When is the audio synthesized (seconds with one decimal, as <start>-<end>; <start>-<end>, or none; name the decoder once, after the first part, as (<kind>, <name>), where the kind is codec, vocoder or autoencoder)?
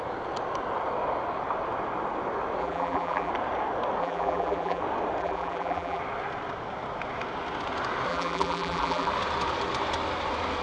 2.6-3.3 (vocoder, BigVGAN v2); 4.0-4.8; 5.2-6.0; 8.1-9.1